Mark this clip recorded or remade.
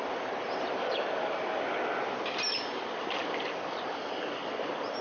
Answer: recorded